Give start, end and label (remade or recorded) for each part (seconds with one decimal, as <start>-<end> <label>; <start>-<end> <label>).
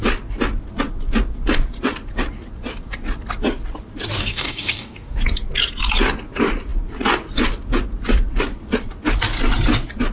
0.0-4.2 recorded; 4.2-5.2 remade; 5.2-10.1 recorded